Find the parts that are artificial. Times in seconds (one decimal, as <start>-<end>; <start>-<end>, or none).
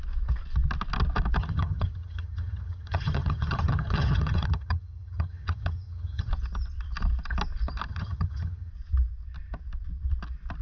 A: 1.4-6.3; 7.9-8.7